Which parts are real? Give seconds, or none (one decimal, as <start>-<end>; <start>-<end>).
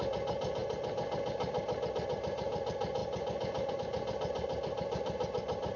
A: 0.6-1.9; 3.0-3.7